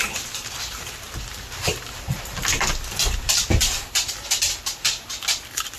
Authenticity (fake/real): fake